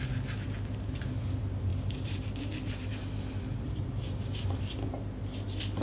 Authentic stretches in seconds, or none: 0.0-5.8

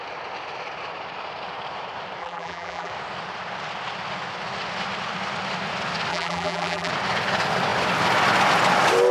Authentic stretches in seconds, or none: 0.0-2.2; 2.9-6.1; 6.9-9.1

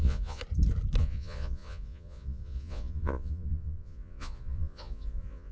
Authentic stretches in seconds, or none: 0.4-1.0

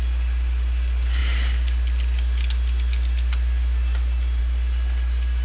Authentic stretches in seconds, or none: 1.2-4.4